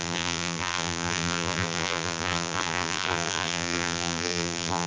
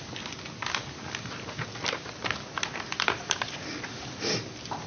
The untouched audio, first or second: second